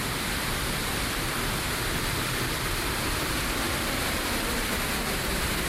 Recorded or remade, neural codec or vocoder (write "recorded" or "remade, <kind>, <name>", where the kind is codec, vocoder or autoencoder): remade, vocoder, BigVGAN v2